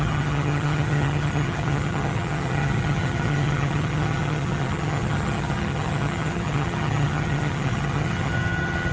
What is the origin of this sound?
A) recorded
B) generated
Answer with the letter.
B